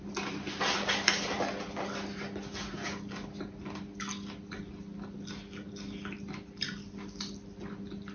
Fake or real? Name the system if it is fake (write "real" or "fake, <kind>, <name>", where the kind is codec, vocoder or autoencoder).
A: real